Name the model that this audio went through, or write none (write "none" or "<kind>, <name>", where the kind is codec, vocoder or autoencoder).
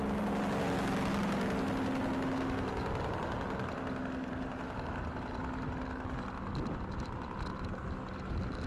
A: none